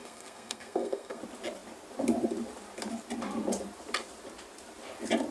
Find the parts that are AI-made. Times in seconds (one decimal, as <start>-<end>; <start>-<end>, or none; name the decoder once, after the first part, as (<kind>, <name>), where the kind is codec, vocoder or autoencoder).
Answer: 0.0-1.2 (codec, SNAC)